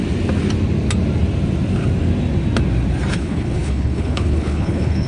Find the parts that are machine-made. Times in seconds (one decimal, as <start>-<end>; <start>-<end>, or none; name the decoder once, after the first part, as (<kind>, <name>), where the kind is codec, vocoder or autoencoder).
3.1-5.1 (codec, HILCodec)